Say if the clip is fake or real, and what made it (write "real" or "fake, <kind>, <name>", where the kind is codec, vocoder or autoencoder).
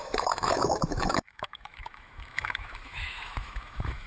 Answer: fake, autoencoder, DAC-VAE